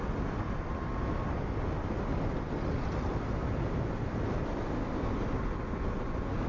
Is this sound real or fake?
real